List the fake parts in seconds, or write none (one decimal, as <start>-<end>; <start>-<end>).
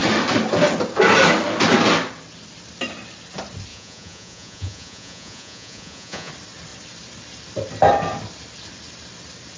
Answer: 3.7-6.3